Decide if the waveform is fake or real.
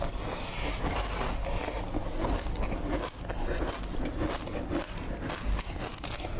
real